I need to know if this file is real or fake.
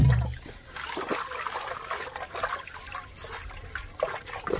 real